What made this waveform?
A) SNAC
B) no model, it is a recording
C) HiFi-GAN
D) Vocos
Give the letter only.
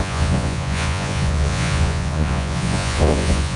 D